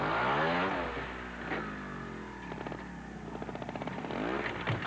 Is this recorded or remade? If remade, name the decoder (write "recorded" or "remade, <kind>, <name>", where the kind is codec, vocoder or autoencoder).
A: recorded